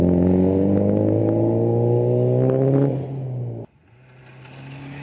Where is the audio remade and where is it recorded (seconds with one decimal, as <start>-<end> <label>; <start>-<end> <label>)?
0.0-5.0 recorded